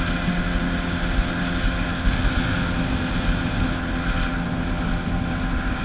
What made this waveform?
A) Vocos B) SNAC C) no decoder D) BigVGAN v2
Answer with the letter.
C